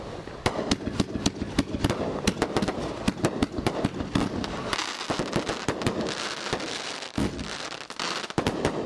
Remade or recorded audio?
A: recorded